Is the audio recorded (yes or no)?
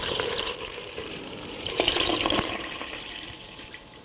no